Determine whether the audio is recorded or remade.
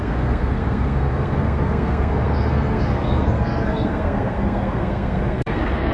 remade